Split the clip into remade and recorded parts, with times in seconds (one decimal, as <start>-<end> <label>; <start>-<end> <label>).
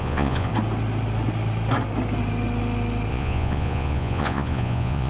0.0-0.5 remade; 0.5-3.1 recorded; 3.1-5.1 remade